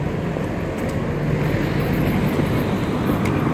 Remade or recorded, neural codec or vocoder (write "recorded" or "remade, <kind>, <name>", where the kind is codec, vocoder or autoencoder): recorded